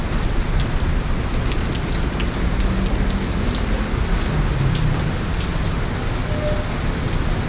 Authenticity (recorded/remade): recorded